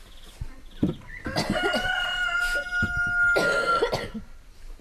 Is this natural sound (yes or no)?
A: yes